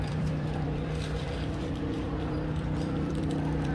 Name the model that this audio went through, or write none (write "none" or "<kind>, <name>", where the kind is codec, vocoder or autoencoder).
vocoder, BigVGAN v2